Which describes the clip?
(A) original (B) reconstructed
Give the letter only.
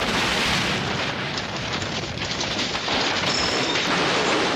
B